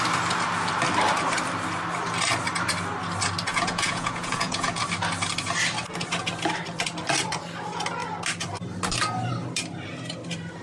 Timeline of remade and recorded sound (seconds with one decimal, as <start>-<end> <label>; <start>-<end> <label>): 0.0-3.5 recorded; 3.5-4.8 remade; 4.8-10.6 recorded